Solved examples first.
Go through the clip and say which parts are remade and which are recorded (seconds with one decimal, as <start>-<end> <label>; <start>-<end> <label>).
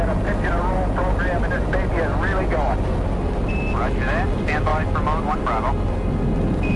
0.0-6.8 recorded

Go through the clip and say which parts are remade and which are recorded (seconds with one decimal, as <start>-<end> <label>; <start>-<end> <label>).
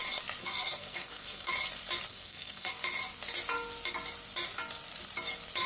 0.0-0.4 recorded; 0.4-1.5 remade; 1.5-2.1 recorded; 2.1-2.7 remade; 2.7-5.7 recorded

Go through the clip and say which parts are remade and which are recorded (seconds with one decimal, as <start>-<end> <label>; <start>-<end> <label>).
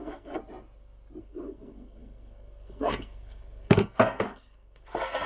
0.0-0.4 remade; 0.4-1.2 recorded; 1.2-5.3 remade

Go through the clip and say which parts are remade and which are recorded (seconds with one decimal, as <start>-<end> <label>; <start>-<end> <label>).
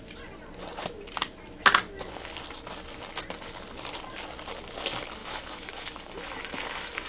0.0-5.2 recorded; 5.2-7.1 remade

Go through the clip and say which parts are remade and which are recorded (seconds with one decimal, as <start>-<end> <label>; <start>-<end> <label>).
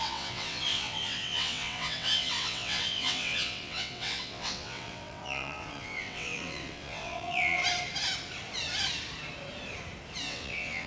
0.0-7.6 remade; 7.6-10.2 recorded; 10.2-10.9 remade